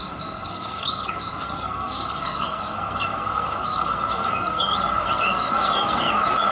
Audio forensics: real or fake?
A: fake